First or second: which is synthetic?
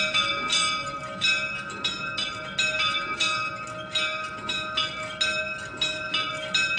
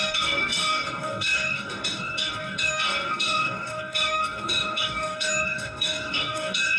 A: second